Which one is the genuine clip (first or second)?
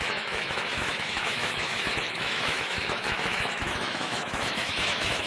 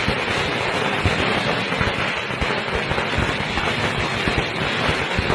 second